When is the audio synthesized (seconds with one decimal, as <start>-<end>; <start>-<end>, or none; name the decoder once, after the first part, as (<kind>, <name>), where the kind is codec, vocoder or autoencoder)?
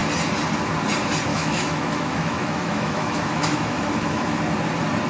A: 1.3-4.4 (autoencoder, DAC-VAE)